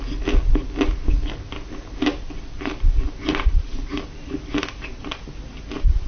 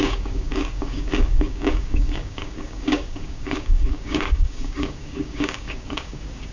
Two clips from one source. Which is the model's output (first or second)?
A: second